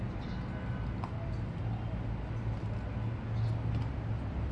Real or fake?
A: real